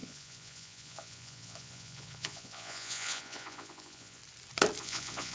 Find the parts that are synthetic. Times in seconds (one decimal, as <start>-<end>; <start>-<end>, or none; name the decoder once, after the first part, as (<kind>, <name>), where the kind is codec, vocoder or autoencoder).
0.0-4.2 (vocoder, Vocos); 4.8-5.3